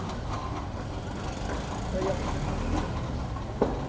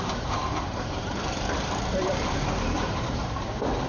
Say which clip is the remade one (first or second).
second